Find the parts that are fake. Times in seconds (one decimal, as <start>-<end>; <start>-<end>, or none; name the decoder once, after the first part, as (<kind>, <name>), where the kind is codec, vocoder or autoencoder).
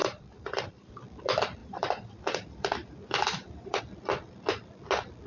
0.0-0.9 (vocoder, BigVGAN v2); 1.6-3.8